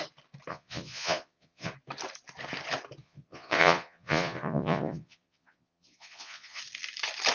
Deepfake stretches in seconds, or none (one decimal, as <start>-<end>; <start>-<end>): 0.5-1.7; 3.0-6.6